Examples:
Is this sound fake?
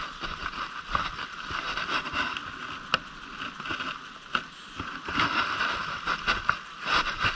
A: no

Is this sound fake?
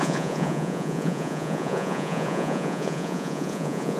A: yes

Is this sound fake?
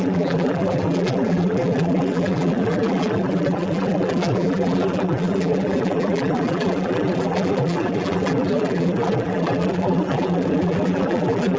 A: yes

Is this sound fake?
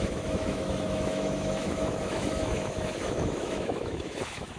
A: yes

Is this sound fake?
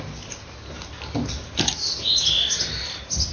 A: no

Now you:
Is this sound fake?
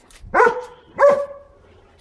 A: yes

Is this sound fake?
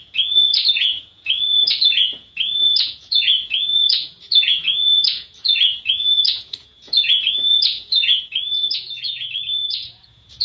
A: yes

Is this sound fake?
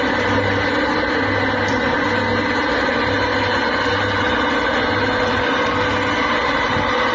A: no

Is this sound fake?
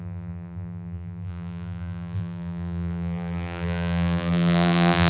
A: yes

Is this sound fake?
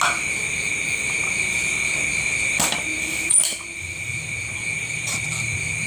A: no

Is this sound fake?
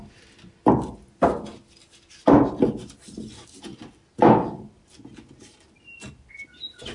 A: no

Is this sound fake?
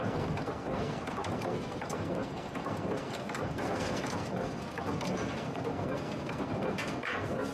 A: yes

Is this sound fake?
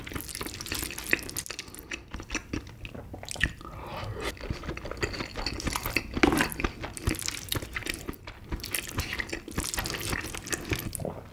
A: no